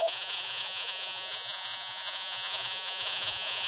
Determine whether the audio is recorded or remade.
remade